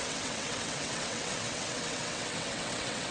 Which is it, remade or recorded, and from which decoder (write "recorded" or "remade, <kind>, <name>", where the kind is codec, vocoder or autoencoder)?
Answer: remade, vocoder, WaveNeXt